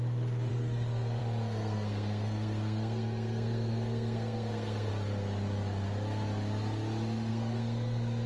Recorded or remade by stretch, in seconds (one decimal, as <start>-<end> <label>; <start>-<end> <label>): 0.0-0.5 recorded; 0.5-1.2 remade; 1.2-1.6 recorded; 1.6-4.9 remade; 4.9-7.3 recorded; 7.3-8.3 remade